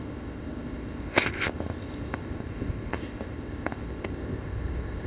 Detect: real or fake fake